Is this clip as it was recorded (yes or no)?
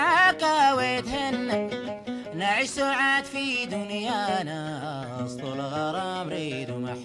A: yes